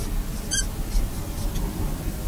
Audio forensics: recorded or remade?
recorded